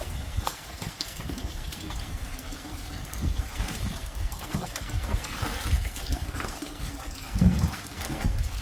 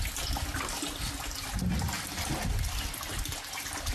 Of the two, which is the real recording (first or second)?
second